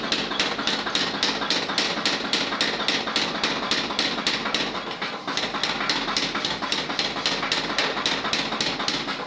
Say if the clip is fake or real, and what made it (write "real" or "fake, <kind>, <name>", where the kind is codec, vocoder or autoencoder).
real